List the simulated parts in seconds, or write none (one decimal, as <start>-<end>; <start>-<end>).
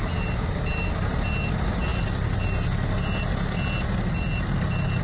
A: none